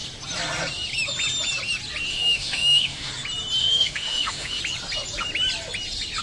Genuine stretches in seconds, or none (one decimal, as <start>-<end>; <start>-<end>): 0.0-2.1; 3.1-3.6; 4.6-6.2